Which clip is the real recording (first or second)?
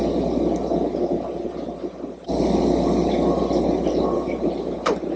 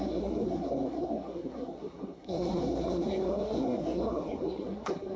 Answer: first